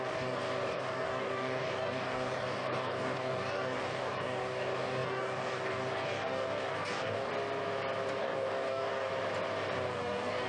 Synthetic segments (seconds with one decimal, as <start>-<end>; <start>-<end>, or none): 0.0-7.3; 8.2-9.1; 9.9-10.5